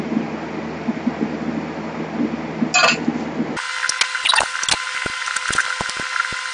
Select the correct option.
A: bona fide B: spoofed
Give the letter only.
A